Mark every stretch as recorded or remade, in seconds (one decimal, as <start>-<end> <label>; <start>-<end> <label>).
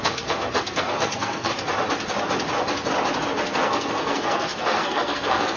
0.0-1.5 remade; 1.5-3.3 recorded; 3.3-5.6 remade